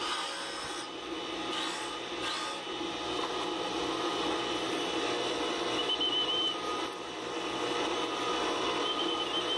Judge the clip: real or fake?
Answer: real